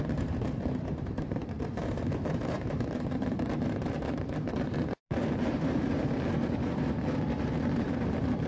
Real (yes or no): no